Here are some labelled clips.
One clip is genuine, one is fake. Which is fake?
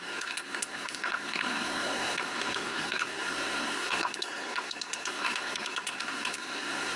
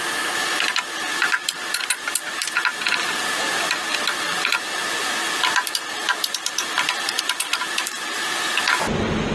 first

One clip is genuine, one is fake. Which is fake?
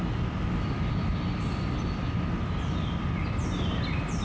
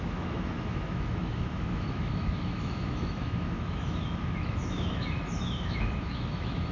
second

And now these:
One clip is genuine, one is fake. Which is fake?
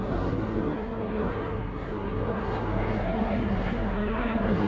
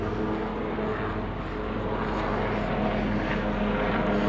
first